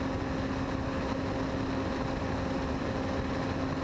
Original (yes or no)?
yes